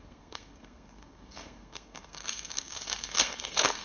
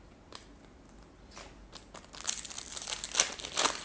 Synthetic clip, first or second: first